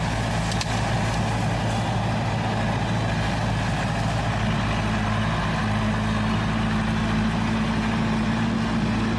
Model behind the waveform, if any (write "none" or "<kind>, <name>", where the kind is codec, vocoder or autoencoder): none